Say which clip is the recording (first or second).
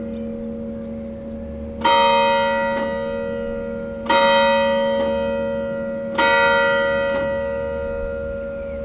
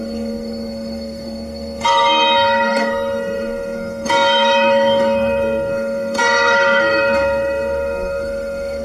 first